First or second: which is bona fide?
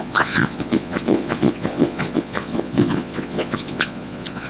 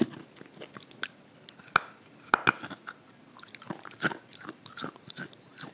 second